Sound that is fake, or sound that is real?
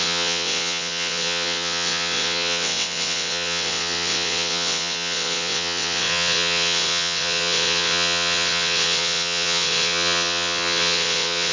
fake